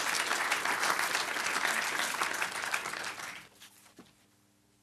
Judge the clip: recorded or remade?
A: recorded